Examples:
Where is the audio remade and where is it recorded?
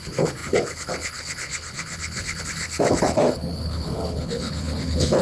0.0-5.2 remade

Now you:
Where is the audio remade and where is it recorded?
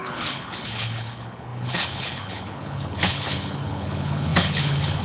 0.0-5.0 remade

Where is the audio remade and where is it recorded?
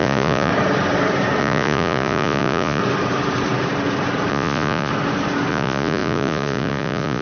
0.0-0.5 remade; 0.5-1.4 recorded; 1.4-2.8 remade; 2.8-4.3 recorded; 4.3-4.9 remade; 4.9-5.5 recorded; 5.5-7.2 remade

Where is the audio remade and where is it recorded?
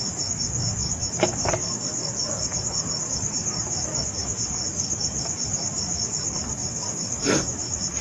0.0-8.0 remade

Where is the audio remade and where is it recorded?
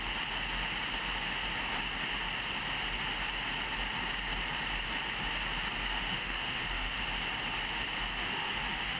0.0-5.8 recorded; 5.8-7.0 remade; 7.0-8.2 recorded; 8.2-9.0 remade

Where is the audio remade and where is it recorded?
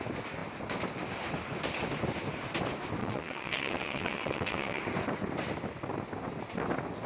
0.0-3.0 recorded; 3.0-4.8 remade; 4.8-7.1 recorded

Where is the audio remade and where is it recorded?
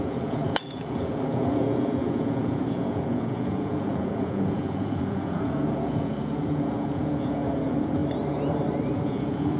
0.0-8.0 remade; 8.0-8.9 recorded; 8.9-9.6 remade